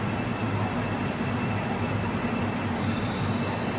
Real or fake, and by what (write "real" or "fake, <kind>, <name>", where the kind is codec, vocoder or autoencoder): real